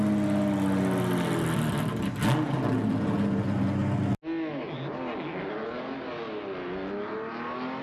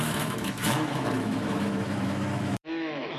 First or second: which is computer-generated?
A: second